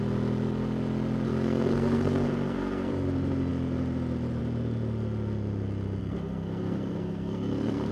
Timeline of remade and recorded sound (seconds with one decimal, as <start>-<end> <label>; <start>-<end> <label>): 0.0-1.3 recorded; 1.3-2.9 remade; 2.9-6.0 recorded; 6.0-7.9 remade